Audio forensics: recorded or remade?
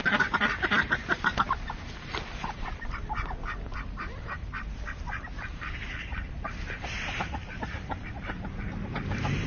remade